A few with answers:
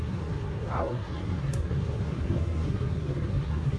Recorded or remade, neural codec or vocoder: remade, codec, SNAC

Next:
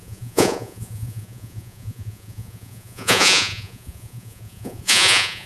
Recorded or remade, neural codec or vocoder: remade, vocoder, Vocos